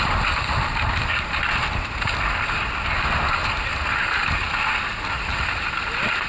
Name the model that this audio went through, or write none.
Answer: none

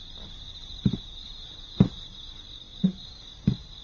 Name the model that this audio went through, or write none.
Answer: none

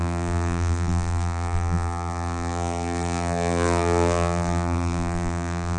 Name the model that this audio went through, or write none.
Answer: vocoder, BigVGAN v2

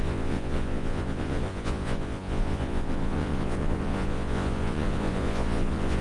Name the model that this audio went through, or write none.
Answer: vocoder, Vocos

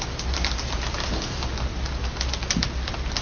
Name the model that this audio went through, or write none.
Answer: none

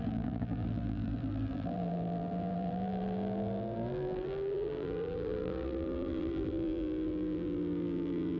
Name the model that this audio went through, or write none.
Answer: vocoder, BigVGAN v2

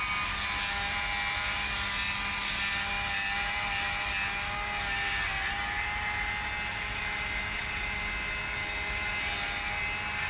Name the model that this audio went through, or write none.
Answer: none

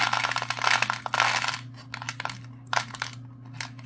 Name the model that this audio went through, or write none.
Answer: none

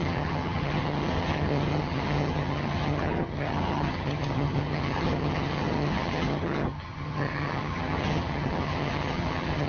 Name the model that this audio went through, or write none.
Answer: vocoder, HiFi-GAN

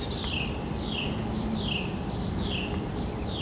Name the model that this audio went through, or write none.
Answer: none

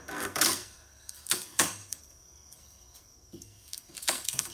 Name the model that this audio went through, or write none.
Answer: codec, SNAC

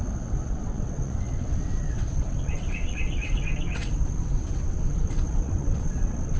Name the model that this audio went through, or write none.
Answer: vocoder, WaveNeXt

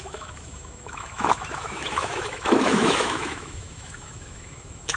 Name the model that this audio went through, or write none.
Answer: autoencoder, DAC-VAE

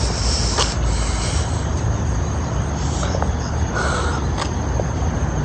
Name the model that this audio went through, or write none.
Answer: none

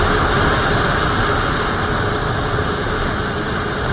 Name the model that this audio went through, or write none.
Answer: none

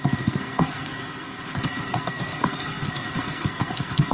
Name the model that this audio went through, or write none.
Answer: codec, SNAC